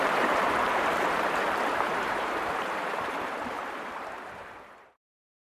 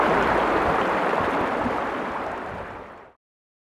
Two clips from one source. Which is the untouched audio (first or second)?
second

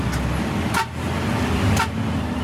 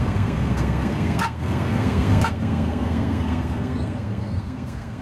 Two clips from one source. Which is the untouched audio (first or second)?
first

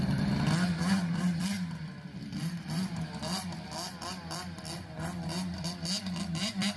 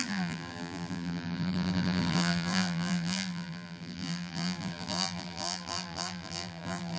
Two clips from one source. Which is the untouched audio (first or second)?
first